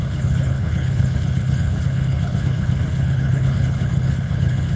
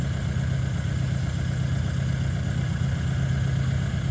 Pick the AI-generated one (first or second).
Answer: first